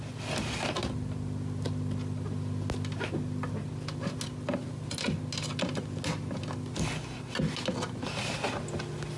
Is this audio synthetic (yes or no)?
no